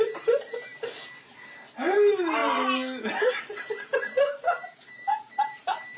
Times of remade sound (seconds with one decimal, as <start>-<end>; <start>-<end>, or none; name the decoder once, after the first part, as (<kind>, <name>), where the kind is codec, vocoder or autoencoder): 0.0-0.7 (vocoder, BigVGAN v2); 1.2-6.0